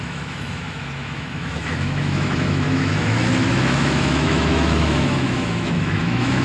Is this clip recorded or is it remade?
remade